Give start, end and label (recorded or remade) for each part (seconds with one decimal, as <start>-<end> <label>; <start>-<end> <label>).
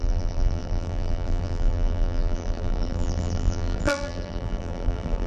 0.0-5.3 remade